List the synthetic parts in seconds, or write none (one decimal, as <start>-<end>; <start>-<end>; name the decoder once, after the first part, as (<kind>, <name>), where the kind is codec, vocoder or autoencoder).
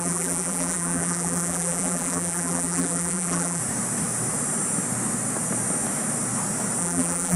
0.0-3.6 (vocoder, BigVGAN v2); 6.8-7.4